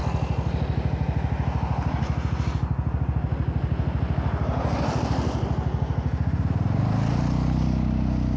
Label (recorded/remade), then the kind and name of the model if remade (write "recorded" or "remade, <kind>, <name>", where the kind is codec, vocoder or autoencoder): recorded